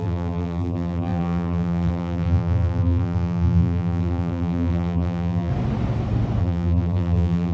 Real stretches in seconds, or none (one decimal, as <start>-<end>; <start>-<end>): 5.5-6.4